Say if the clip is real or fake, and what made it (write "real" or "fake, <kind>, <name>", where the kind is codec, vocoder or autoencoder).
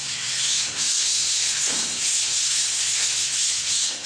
fake, codec, SNAC